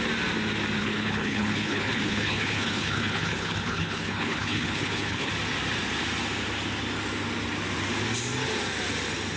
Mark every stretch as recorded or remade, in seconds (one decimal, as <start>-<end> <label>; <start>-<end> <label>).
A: 0.0-0.8 recorded; 0.8-5.3 remade; 5.3-9.4 recorded